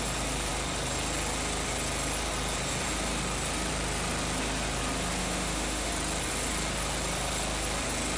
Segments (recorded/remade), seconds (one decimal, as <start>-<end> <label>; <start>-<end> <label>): 0.0-5.2 recorded; 5.2-5.9 remade; 5.9-8.2 recorded